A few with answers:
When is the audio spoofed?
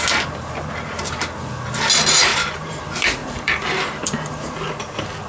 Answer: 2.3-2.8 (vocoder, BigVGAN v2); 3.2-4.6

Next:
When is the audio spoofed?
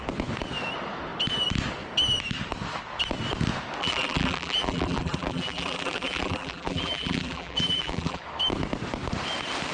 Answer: 3.8-8.2 (vocoder, BigVGAN v2)